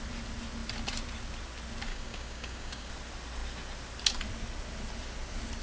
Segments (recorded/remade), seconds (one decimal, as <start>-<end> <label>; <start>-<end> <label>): 0.0-1.9 recorded; 1.9-2.9 remade; 2.9-5.6 recorded